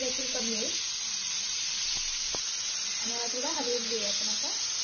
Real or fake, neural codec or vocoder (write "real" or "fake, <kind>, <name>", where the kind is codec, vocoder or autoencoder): real